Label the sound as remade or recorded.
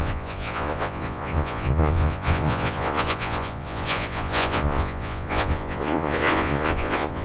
remade